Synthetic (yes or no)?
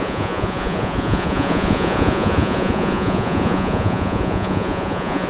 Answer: yes